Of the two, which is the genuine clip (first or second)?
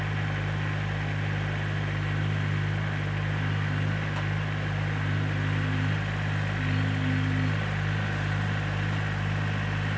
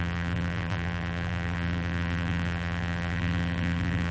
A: first